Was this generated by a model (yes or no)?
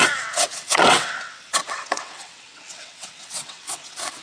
yes